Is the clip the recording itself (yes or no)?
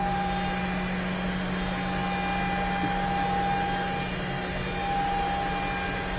yes